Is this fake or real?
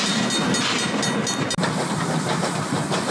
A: real